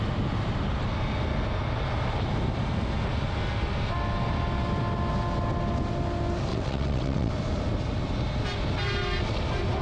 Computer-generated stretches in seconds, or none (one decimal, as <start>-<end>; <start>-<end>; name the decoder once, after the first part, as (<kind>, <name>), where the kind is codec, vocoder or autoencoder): 6.5-7.3 (vocoder, WaveNeXt)